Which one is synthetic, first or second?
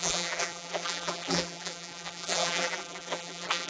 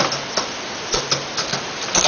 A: first